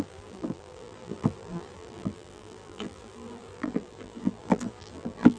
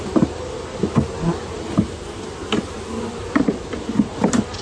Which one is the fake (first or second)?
first